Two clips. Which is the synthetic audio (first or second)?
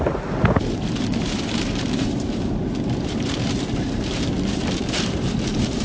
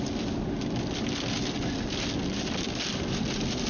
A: first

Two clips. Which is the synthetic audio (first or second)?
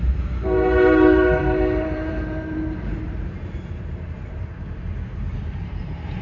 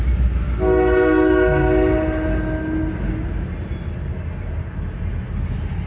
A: first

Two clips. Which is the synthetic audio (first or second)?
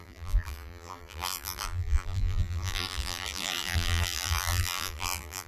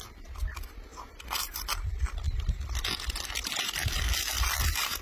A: first